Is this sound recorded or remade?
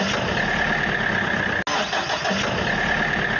recorded